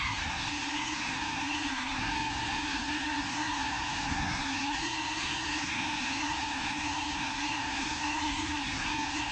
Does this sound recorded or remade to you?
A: remade